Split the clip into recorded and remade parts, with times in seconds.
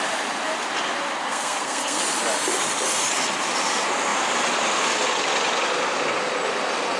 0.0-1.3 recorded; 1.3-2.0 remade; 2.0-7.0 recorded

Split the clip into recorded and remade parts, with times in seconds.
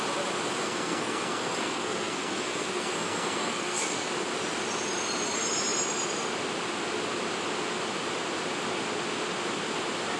0.0-0.6 recorded; 0.6-4.1 remade; 4.1-10.2 recorded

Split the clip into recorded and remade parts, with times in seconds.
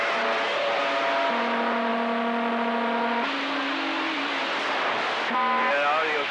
0.0-6.3 recorded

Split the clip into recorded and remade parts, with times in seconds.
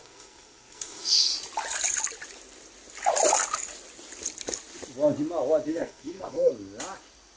0.0-1.3 remade; 1.3-5.7 recorded; 5.7-6.5 remade; 6.5-7.4 recorded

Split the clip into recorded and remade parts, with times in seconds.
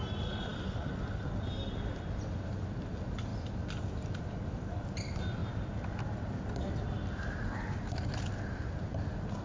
0.0-9.4 recorded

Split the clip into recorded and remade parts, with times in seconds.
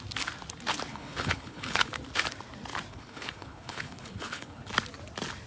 0.0-0.9 recorded; 0.9-1.9 remade; 1.9-2.9 recorded; 2.9-4.7 remade; 4.7-5.5 recorded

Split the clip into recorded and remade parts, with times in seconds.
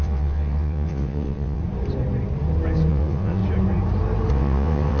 0.0-1.6 remade; 1.6-2.9 recorded; 2.9-3.4 remade; 3.4-4.3 recorded; 4.3-5.0 remade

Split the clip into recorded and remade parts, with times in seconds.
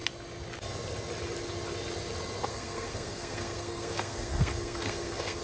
0.0-2.5 recorded; 2.5-5.4 remade